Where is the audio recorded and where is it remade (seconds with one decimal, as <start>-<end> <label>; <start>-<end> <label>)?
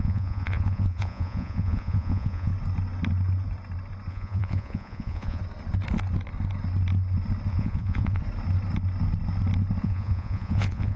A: 0.0-2.5 remade; 2.5-4.1 recorded; 4.1-5.4 remade; 5.4-7.5 recorded; 7.5-8.2 remade; 8.2-9.8 recorded; 9.8-11.0 remade